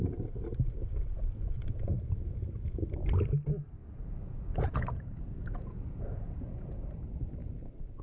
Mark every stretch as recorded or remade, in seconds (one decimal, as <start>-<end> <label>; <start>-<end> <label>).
0.0-0.8 recorded; 0.8-1.9 remade; 1.9-3.8 recorded; 3.8-6.7 remade; 6.7-8.0 recorded

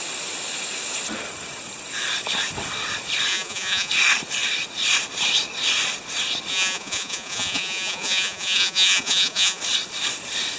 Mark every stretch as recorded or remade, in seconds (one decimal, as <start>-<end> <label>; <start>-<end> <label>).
0.0-3.3 recorded; 3.3-3.9 remade; 3.9-6.5 recorded; 6.5-9.6 remade; 9.6-10.6 recorded

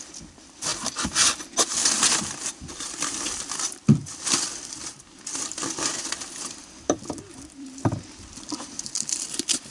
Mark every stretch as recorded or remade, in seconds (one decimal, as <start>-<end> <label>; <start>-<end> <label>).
0.0-0.7 remade; 0.7-2.5 recorded; 2.5-9.7 remade

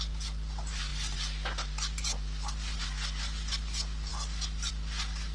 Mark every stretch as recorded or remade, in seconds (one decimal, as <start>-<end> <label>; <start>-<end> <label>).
0.0-5.3 recorded

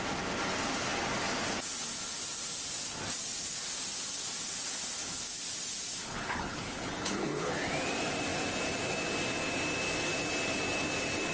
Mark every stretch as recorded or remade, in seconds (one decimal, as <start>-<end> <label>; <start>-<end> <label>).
0.0-6.0 recorded; 6.0-7.6 remade; 7.6-11.3 recorded

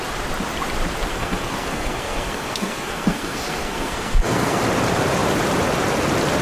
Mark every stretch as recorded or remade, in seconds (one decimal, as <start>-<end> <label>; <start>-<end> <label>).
0.0-1.1 recorded; 1.1-4.6 remade; 4.6-6.4 recorded

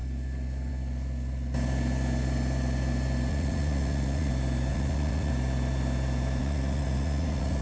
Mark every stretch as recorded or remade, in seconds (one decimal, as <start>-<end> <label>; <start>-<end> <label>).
0.0-3.3 recorded; 3.3-4.3 remade; 4.3-4.7 recorded; 4.7-5.3 remade; 5.3-6.4 recorded; 6.4-7.6 remade

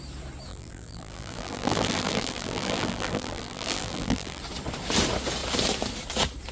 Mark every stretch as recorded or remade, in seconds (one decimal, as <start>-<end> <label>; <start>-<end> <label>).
0.0-0.5 recorded; 0.5-4.4 remade; 4.4-6.5 recorded